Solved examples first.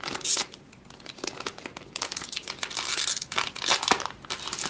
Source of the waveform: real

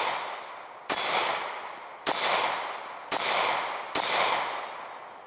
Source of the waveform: real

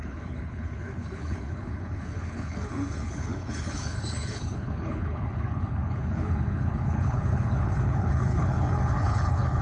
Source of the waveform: fake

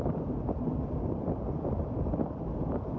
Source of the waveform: real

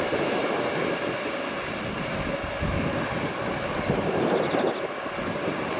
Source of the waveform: real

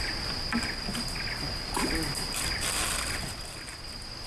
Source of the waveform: real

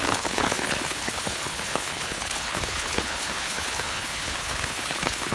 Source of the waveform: fake